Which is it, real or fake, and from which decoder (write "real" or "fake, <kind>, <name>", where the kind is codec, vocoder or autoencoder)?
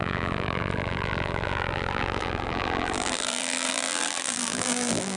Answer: fake, vocoder, BigVGAN v2